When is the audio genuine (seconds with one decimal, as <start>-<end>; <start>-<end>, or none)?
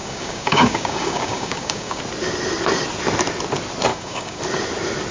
2.0-3.9; 4.4-5.1